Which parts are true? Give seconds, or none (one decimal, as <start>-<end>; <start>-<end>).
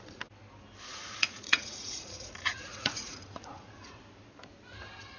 0.0-0.9; 4.0-5.2